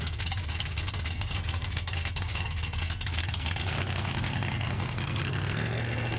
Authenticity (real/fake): fake